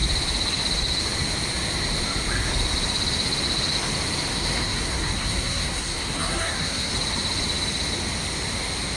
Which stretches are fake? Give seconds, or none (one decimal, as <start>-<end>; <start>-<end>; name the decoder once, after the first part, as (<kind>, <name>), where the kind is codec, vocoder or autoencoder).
4.3-6.9 (codec, SNAC)